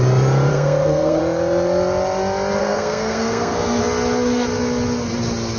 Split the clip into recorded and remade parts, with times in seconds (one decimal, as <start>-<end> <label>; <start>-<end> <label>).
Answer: 0.0-0.5 recorded; 0.5-1.2 remade; 1.2-2.6 recorded; 2.6-3.8 remade; 3.8-5.6 recorded